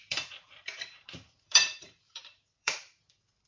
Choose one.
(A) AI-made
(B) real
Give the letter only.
A